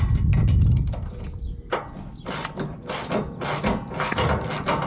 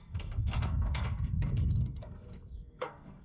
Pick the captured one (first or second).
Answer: first